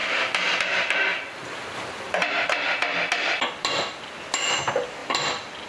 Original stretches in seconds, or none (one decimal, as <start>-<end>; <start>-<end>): 0.0-5.0